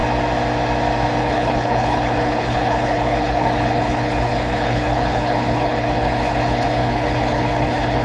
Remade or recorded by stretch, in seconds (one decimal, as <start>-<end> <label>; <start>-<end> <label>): 0.0-1.2 recorded; 1.2-8.0 remade

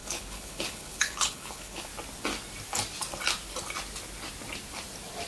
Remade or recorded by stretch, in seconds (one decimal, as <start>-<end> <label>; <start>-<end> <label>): 0.0-1.9 remade; 1.9-5.3 recorded

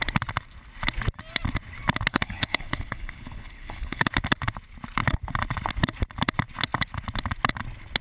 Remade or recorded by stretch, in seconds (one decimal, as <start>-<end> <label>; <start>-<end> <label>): 0.0-2.1 recorded; 2.1-4.1 remade; 4.1-8.0 recorded

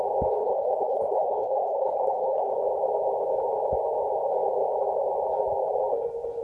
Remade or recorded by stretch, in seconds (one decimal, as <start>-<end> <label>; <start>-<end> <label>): 0.0-0.4 recorded; 0.4-2.5 remade; 2.5-6.4 recorded

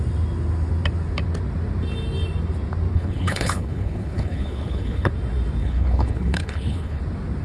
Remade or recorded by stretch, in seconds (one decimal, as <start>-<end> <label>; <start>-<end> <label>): 0.0-2.9 recorded; 2.9-5.1 remade; 5.1-5.6 recorded; 5.6-7.0 remade; 7.0-7.4 recorded

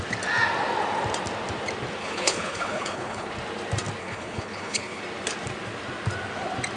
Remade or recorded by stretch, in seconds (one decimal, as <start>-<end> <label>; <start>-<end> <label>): 0.0-2.0 recorded; 2.0-3.3 remade; 3.3-4.0 recorded; 4.0-5.0 remade; 5.0-6.8 recorded